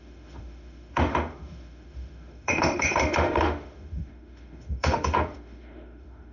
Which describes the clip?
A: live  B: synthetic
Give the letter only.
B